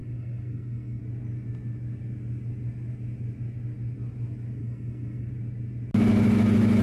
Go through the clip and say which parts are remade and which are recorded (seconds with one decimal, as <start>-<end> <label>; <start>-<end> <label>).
0.0-1.0 remade; 1.0-4.6 recorded; 4.6-5.3 remade; 5.3-6.8 recorded